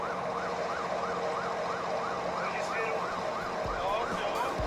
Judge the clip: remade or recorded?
recorded